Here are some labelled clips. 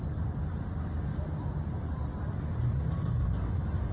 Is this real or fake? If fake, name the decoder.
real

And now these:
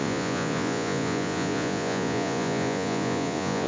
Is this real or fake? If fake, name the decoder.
fake, vocoder, Vocos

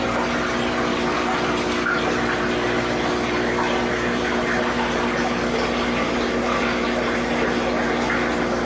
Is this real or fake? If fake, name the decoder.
real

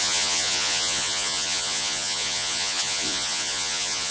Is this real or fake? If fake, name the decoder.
fake, vocoder, Vocos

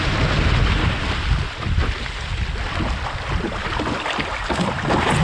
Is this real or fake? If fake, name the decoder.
real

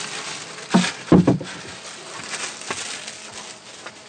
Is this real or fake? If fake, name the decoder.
real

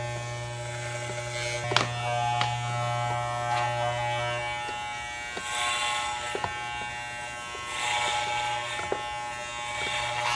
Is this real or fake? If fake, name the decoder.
real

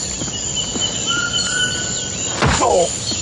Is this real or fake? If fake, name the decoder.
real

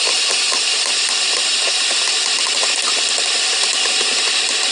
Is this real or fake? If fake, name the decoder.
real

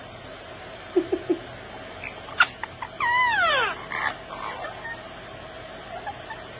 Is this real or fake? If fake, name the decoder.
real